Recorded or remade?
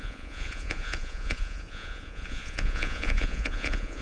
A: remade